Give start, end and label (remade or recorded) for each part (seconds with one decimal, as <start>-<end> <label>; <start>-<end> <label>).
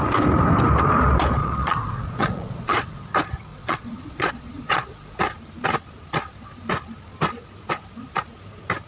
0.0-1.4 recorded; 1.4-3.0 remade; 3.0-3.5 recorded; 3.5-5.2 remade; 5.2-8.9 recorded